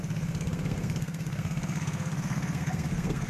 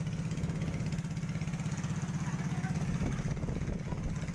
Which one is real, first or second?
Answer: second